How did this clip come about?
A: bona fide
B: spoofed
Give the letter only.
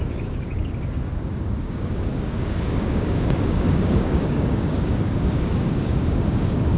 B